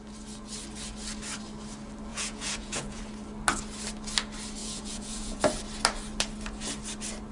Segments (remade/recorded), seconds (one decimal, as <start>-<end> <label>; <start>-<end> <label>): 0.0-2.1 recorded; 2.1-3.0 remade; 3.0-4.6 recorded; 4.6-5.4 remade; 5.4-7.3 recorded